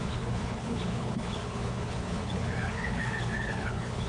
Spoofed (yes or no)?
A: yes